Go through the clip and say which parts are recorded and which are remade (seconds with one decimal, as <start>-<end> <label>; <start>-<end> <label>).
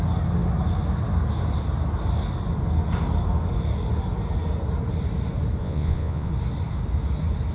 0.0-5.6 recorded; 5.6-6.3 remade; 6.3-7.5 recorded